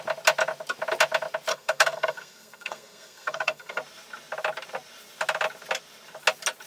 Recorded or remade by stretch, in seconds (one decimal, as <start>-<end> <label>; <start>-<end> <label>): 0.0-1.5 recorded; 1.5-3.8 remade; 3.8-6.7 recorded